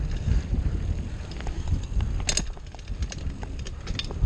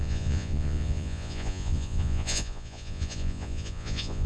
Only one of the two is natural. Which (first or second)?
first